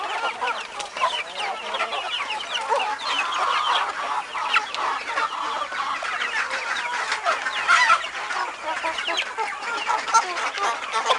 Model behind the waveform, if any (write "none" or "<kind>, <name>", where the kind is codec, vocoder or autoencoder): none